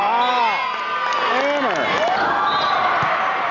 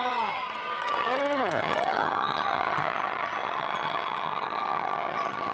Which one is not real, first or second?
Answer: second